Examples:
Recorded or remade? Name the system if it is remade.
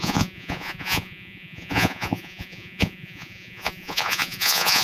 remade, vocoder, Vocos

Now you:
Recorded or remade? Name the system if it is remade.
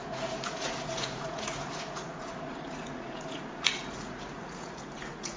remade, vocoder, Vocos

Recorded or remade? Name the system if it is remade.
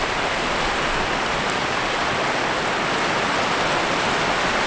recorded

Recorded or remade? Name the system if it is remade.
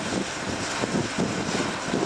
recorded